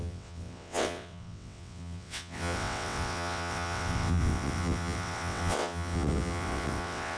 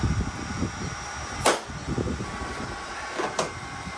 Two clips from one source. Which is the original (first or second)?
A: second